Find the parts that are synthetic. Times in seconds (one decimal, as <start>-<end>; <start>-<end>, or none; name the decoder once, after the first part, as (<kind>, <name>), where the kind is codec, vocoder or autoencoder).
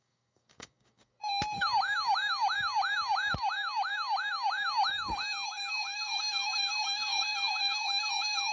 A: 0.0-1.2 (codec, DAC); 5.5-8.5